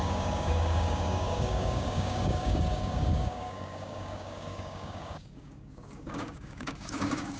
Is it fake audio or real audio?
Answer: fake